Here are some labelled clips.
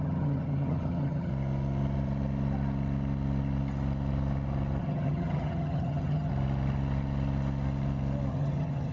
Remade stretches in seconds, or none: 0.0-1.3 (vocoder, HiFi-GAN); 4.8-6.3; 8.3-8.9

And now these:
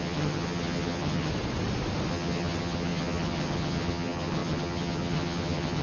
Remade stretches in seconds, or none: 0.0-1.3 (vocoder, HiFi-GAN); 2.1-5.8

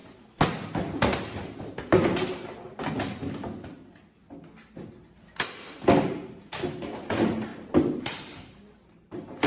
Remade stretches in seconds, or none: none

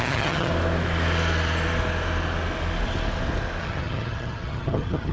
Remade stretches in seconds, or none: 0.0-0.5 (vocoder, HiFi-GAN); 3.6-5.1

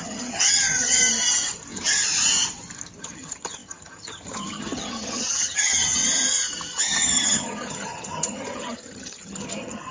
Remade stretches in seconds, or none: 0.0-1.0 (vocoder, HiFi-GAN); 3.0-6.0; 6.8-9.9

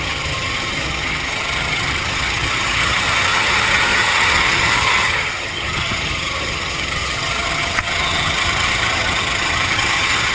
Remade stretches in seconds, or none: 0.0-10.3 (vocoder, HiFi-GAN)

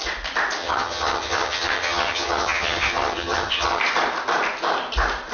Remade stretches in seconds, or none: 0.6-3.8 (vocoder, HiFi-GAN)

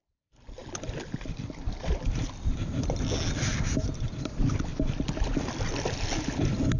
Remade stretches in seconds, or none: none